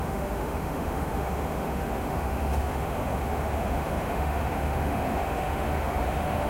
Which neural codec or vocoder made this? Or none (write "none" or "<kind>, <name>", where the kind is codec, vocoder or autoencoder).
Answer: autoencoder, DAC-VAE